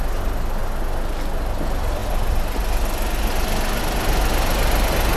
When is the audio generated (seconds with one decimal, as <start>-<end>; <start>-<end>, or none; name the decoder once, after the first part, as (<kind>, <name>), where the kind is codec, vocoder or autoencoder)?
none